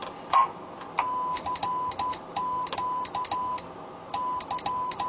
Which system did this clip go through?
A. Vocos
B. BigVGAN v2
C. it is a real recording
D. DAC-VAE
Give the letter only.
C